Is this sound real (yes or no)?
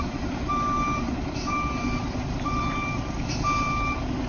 no